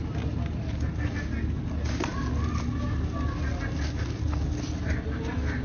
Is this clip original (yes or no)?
yes